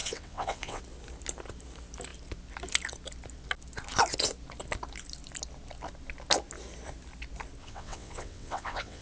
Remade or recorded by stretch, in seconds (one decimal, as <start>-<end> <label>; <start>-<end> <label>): 0.0-0.8 remade; 0.8-7.6 recorded; 7.6-9.0 remade